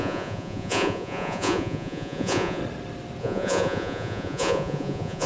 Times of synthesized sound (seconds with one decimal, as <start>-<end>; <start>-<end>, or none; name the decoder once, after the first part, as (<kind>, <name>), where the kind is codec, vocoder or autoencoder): 0.0-2.6 (vocoder, Vocos); 3.2-5.3